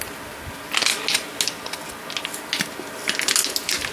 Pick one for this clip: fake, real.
real